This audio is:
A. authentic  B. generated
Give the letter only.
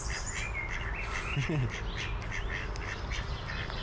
A